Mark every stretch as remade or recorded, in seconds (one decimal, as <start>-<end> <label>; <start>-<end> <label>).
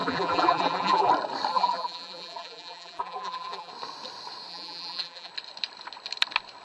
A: 0.0-1.1 remade; 1.1-1.5 recorded; 1.5-3.7 remade; 3.7-4.5 recorded; 4.5-5.3 remade; 5.3-6.6 recorded